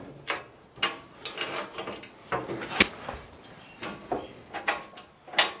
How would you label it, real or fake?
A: real